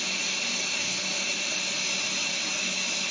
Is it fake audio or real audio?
real